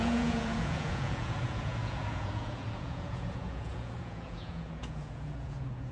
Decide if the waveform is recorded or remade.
remade